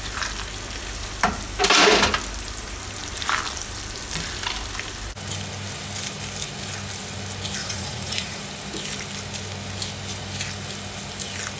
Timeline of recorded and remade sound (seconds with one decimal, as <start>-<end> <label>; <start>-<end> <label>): 0.0-7.6 recorded; 7.6-8.4 remade; 8.4-11.6 recorded